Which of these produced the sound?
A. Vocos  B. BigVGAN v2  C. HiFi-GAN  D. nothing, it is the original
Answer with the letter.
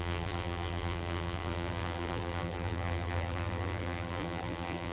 B